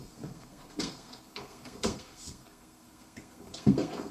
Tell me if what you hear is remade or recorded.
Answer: remade